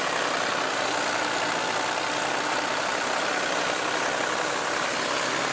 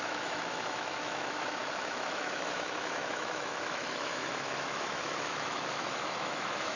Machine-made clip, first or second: second